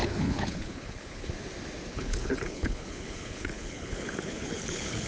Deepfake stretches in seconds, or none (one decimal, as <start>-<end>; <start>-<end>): 0.0-1.3; 1.9-5.1